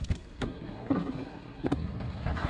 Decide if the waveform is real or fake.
fake